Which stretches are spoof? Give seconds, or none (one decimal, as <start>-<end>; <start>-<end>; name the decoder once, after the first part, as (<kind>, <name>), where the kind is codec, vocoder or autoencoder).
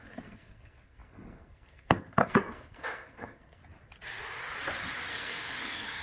0.0-3.6 (codec, SNAC); 5.1-6.0